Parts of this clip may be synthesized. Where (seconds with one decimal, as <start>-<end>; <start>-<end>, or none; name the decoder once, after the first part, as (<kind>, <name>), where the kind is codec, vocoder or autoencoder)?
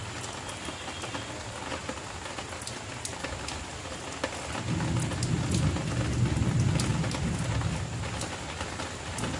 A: none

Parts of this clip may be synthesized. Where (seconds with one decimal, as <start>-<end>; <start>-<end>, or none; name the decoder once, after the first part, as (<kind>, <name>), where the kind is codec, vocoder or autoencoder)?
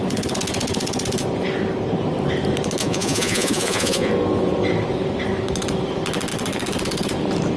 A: 2.8-4.1 (vocoder, Vocos)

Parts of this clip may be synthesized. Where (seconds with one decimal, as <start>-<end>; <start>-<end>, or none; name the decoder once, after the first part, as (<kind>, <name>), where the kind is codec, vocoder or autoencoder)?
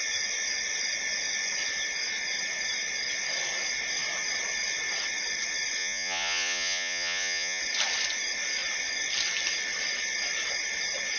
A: 5.8-7.6 (vocoder, Vocos)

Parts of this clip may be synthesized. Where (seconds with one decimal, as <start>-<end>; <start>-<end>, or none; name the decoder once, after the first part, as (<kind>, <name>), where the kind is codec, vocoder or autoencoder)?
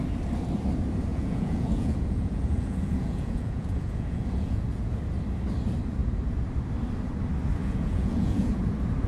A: 1.1-5.0 (vocoder, Vocos); 7.6-8.7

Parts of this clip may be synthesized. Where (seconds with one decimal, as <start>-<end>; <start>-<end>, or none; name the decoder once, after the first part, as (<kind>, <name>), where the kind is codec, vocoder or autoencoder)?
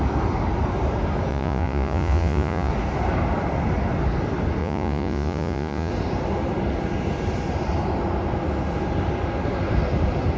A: 1.3-2.7 (vocoder, Vocos); 4.6-5.9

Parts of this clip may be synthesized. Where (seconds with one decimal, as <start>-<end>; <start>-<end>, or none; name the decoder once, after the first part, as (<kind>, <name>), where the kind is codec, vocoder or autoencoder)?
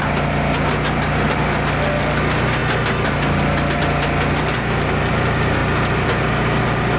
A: none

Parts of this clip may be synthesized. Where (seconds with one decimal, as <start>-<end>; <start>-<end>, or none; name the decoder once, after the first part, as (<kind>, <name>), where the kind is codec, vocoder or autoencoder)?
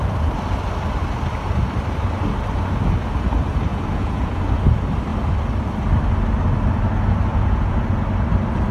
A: 3.7-4.4 (vocoder, Vocos); 7.3-7.8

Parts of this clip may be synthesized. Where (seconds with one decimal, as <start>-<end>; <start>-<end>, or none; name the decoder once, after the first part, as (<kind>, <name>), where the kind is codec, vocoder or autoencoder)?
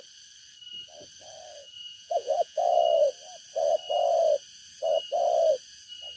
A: 1.6-2.8 (vocoder, Vocos)